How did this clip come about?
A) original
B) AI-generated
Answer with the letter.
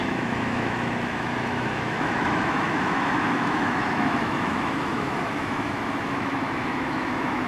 B